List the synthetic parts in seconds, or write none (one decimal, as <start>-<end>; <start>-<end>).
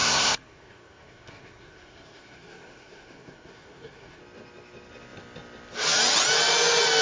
0.0-4.2